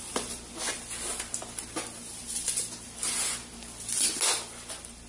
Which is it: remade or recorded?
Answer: recorded